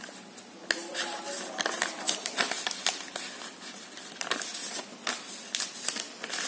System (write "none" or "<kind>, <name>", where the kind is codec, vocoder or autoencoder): none